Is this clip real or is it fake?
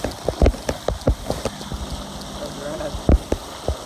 real